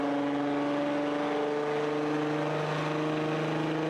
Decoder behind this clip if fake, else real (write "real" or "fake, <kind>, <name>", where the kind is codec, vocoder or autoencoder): real